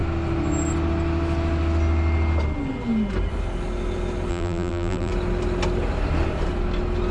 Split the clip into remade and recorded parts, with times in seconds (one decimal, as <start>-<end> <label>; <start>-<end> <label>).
0.0-4.3 recorded; 4.3-5.1 remade; 5.1-7.1 recorded